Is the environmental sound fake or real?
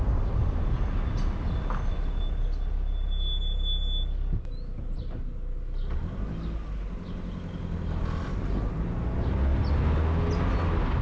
real